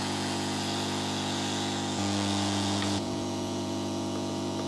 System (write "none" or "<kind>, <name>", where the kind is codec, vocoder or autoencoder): vocoder, Vocos